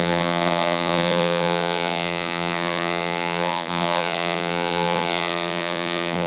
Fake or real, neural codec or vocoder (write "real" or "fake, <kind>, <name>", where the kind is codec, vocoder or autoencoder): fake, vocoder, BigVGAN v2